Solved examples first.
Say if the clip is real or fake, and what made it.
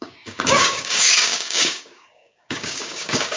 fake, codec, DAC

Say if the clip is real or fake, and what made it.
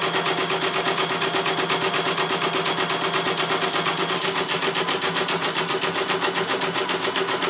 real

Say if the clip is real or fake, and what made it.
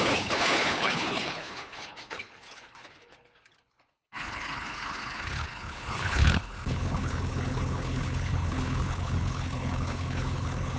fake, codec, HILCodec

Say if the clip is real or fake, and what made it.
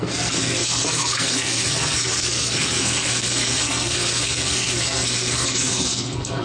fake, codec, SNAC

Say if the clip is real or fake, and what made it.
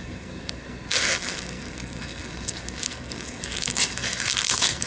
fake, codec, SNAC